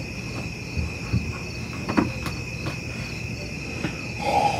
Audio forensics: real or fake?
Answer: real